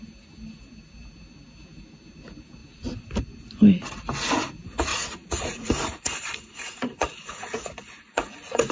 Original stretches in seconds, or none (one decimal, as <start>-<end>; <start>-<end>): 0.0-4.9

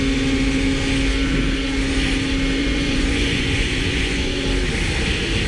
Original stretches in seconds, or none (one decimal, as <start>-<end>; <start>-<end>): 0.0-2.6; 4.4-5.5

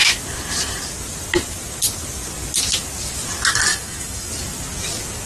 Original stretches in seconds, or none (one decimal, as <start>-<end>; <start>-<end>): 0.0-3.7; 4.3-5.3

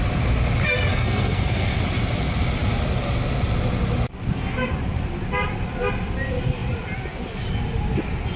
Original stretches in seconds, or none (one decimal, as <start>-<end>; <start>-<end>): 0.0-0.9; 1.8-8.4

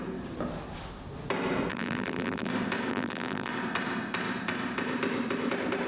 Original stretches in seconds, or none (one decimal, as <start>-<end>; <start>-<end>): 0.0-1.7; 2.5-2.9; 3.5-5.9

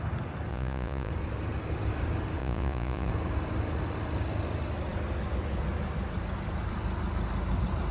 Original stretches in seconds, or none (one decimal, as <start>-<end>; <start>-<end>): 0.0-0.5; 1.1-2.4; 3.1-7.9